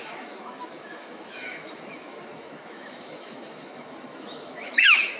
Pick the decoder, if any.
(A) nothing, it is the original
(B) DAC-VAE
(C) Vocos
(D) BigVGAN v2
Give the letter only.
B